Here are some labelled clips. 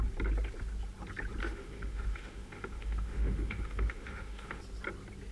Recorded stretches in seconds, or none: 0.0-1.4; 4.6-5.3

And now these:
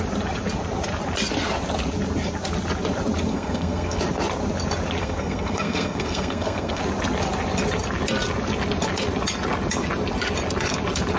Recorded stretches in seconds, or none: 0.0-3.3; 4.0-5.0; 6.8-11.2